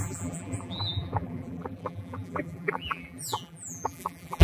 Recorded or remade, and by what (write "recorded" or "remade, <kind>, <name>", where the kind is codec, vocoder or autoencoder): remade, vocoder, BigVGAN v2